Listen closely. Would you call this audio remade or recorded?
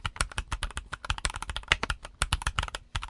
recorded